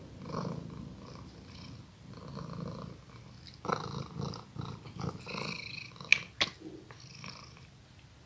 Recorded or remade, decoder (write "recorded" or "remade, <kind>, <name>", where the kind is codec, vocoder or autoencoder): recorded